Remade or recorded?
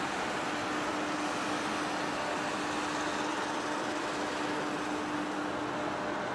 recorded